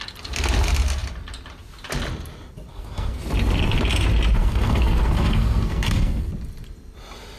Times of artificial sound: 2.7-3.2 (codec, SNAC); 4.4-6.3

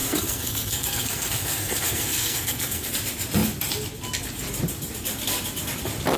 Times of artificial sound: 0.0-2.9 (codec, SNAC)

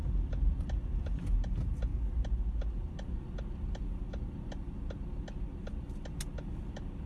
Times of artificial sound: none

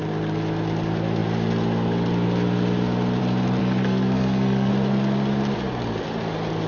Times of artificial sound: 3.6-4.7 (codec, SNAC)